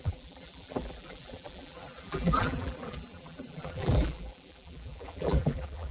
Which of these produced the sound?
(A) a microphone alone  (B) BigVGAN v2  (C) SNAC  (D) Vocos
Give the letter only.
B